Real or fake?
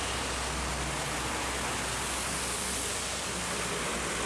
real